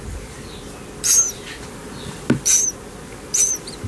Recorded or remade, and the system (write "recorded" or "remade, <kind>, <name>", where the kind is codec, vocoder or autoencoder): remade, vocoder, BigVGAN v2